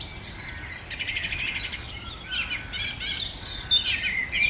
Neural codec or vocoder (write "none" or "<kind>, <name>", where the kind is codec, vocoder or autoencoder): none